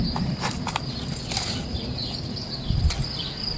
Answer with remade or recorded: recorded